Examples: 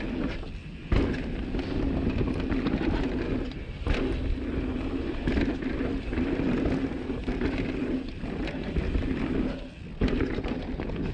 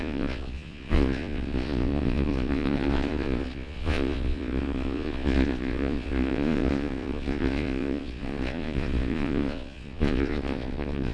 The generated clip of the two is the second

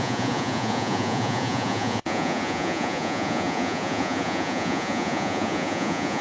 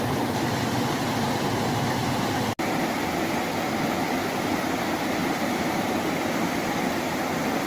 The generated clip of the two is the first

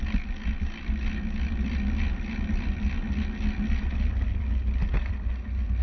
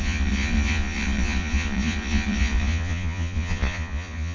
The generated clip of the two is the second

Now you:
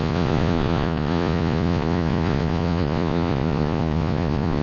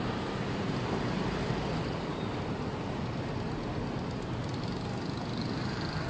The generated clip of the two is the first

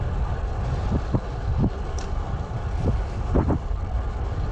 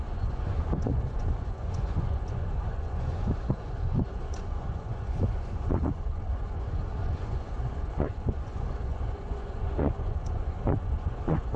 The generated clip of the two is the second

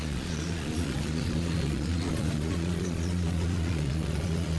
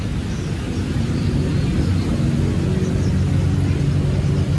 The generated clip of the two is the first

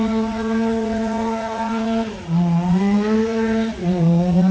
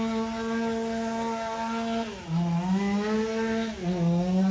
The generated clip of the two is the first